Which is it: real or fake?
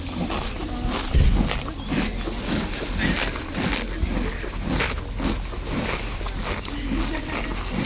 real